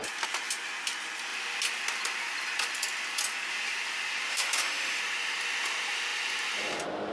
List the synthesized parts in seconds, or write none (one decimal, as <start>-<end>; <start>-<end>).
4.3-5.0